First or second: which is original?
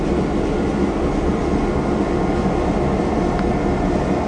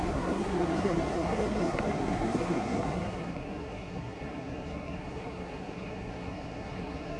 first